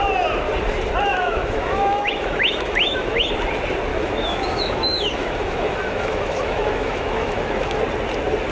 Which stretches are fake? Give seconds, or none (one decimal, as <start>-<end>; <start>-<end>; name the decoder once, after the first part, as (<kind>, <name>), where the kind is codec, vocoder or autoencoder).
1.1-3.3 (autoencoder, DAC-VAE); 3.9-7.8